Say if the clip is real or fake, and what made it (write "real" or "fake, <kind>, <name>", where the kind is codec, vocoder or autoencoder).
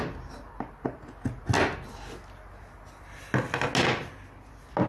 real